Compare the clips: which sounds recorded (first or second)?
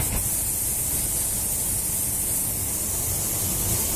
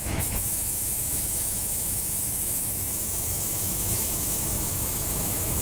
first